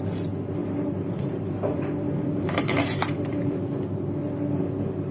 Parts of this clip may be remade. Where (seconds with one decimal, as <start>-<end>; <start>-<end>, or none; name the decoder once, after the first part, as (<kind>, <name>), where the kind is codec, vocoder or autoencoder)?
0.6-3.6 (vocoder, BigVGAN v2)